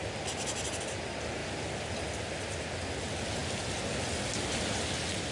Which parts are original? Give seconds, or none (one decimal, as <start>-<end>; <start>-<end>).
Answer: 0.0-5.3